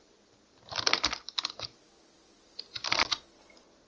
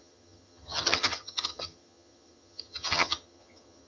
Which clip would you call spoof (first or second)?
second